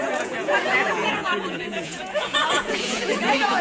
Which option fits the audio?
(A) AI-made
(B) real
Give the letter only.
A